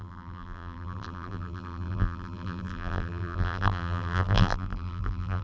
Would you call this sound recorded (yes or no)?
no